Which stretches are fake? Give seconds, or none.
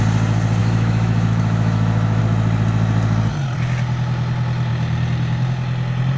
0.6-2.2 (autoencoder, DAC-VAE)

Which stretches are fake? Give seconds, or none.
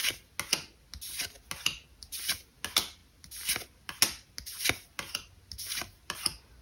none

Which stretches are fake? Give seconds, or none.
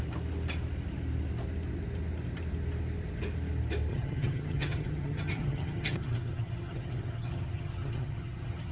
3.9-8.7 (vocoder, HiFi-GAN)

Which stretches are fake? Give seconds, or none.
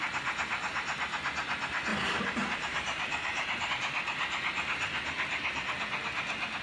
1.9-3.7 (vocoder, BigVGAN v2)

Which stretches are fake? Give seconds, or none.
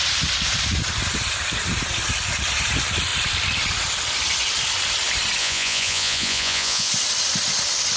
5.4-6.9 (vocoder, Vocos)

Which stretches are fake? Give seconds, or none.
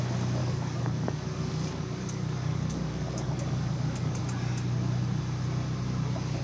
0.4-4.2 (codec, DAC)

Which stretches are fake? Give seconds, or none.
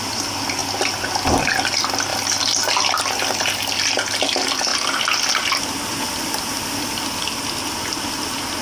none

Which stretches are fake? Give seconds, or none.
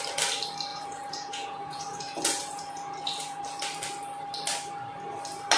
0.7-3.4 (vocoder, Vocos)